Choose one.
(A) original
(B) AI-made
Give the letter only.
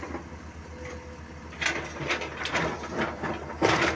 A